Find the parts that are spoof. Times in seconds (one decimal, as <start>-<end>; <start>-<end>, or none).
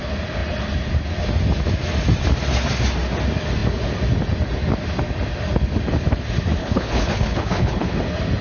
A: 6.6-7.9